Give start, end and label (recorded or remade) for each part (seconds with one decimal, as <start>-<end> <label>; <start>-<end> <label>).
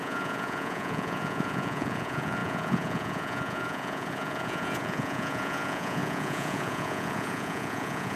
0.0-8.2 remade